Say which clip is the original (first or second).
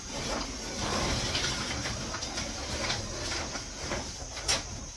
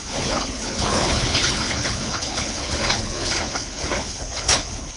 first